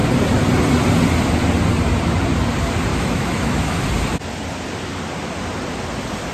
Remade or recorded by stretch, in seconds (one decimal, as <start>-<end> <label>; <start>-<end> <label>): 0.0-2.9 recorded; 2.9-3.8 remade; 3.8-6.3 recorded